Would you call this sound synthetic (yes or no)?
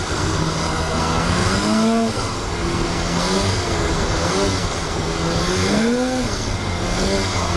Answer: yes